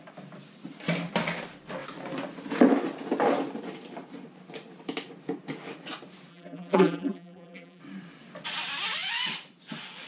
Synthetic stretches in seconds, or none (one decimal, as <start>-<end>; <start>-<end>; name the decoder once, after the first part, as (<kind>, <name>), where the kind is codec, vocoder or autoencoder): 6.3-7.8 (vocoder, BigVGAN v2)